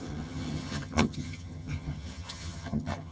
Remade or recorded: remade